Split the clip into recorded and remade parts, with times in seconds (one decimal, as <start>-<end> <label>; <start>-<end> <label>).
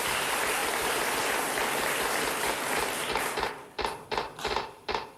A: 0.0-0.6 remade; 0.6-3.5 recorded; 3.5-5.2 remade